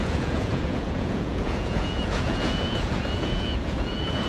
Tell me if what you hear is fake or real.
fake